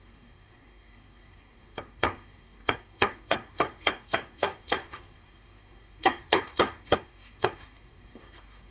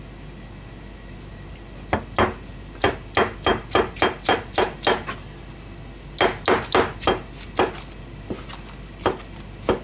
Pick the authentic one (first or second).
second